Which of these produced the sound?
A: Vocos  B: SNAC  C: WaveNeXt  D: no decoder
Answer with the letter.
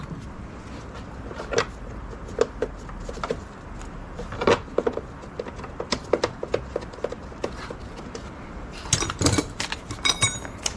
D